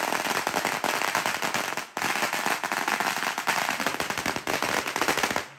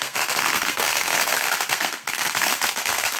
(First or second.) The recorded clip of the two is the first